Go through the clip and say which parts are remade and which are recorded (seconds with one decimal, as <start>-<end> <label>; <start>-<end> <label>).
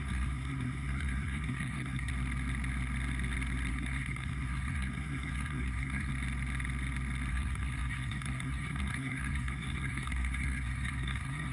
0.0-2.1 remade; 2.1-3.7 recorded; 3.7-6.1 remade; 6.1-7.3 recorded; 7.3-11.5 remade